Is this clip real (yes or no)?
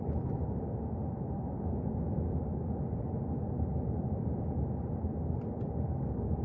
yes